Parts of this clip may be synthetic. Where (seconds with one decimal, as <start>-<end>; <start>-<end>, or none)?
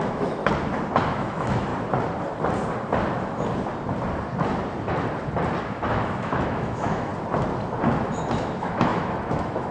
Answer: 0.0-0.4; 1.1-1.7; 5.6-7.1; 8.3-9.7